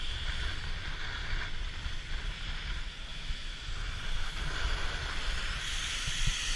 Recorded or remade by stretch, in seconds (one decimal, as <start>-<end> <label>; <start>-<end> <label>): 0.0-3.1 recorded; 3.1-3.7 remade; 3.7-6.6 recorded